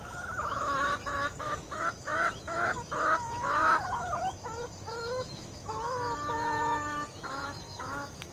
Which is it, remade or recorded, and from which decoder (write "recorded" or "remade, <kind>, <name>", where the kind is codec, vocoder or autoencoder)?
remade, autoencoder, DAC-VAE